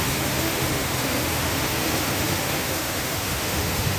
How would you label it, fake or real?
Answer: fake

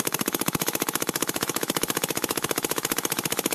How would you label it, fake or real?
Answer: fake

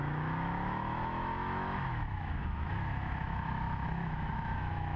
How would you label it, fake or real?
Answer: fake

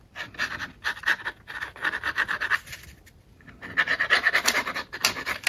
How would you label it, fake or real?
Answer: real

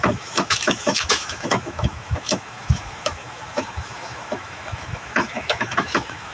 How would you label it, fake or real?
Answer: fake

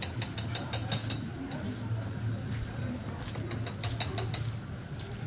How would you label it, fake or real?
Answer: real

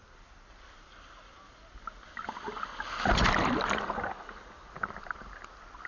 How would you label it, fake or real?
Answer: real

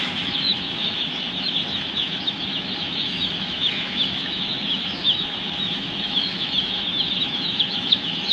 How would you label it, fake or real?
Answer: fake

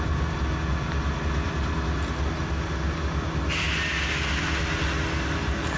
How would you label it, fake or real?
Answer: real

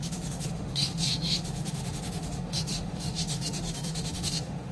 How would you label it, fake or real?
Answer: fake